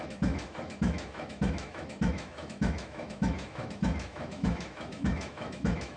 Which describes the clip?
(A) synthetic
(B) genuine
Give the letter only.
A